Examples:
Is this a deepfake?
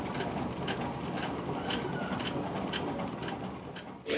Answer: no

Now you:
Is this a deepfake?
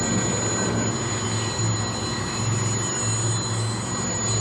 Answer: no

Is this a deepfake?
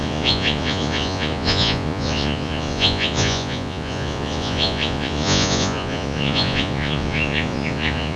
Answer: yes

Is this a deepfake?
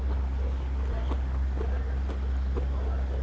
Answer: no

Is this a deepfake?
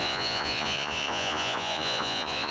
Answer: yes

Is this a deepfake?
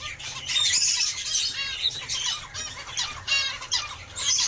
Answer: yes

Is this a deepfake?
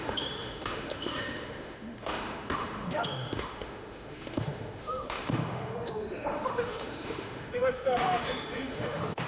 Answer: yes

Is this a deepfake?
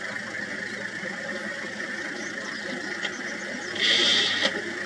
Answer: no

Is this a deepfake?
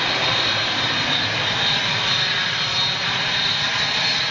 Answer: no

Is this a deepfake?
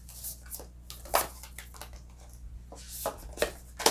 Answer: no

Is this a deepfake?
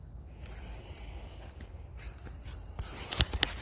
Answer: no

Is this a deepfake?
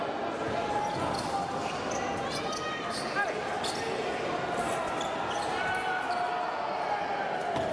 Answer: no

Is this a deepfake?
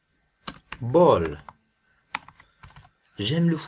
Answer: no